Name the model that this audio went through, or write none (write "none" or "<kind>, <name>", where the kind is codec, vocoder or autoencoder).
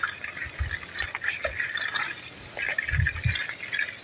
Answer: none